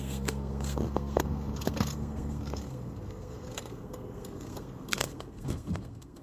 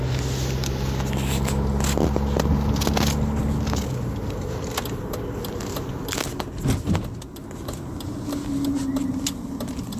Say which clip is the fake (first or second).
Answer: first